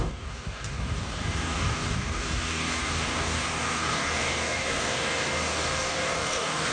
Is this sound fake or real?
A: fake